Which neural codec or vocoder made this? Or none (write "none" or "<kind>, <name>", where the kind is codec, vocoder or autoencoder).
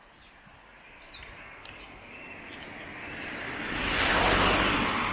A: none